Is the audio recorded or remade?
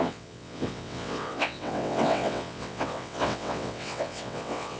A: remade